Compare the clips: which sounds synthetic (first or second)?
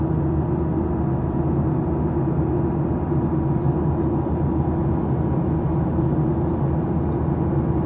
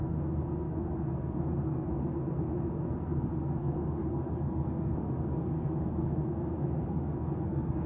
second